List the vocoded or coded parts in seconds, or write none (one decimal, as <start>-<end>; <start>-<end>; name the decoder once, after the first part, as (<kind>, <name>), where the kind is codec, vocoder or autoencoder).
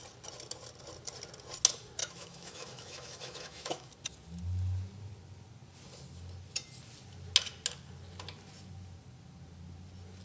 2.0-3.9 (autoencoder, DAC-VAE)